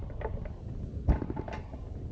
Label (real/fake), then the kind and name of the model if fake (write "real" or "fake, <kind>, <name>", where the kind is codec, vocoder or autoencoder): real